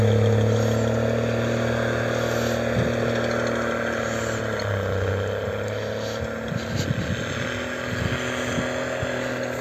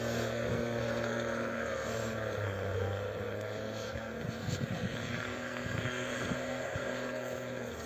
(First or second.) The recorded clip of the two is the first